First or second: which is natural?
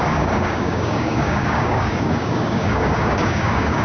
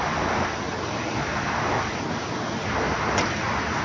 second